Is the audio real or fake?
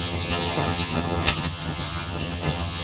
fake